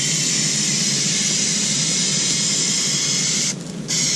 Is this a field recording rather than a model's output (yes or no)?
yes